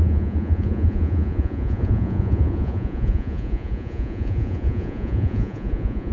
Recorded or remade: remade